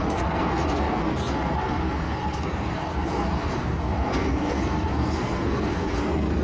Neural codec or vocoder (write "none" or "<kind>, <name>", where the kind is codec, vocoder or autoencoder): codec, SNAC